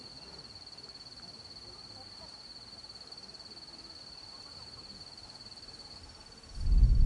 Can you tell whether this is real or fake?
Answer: real